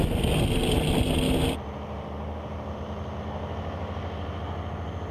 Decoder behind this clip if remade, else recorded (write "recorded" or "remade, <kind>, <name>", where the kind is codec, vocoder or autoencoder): recorded